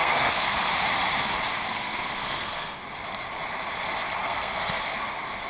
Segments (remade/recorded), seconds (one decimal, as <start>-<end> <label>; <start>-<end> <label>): 0.0-0.7 remade; 0.7-1.5 recorded; 1.5-2.8 remade; 2.8-4.2 recorded; 4.2-4.8 remade; 4.8-5.5 recorded